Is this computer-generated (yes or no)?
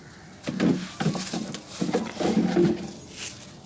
no